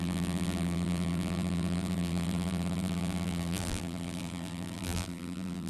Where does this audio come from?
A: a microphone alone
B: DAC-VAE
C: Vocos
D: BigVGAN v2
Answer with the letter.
D